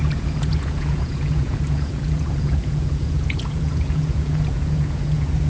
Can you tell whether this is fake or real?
fake